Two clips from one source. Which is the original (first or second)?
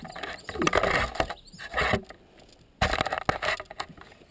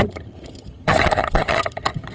first